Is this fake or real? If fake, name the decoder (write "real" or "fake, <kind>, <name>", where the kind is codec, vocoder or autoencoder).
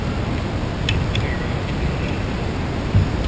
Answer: real